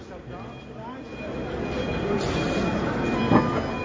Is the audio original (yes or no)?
yes